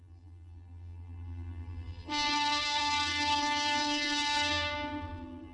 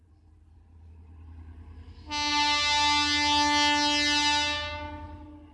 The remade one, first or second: first